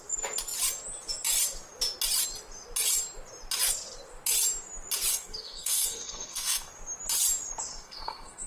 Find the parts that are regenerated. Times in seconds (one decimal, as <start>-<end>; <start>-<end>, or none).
5.1-6.7; 7.7-8.5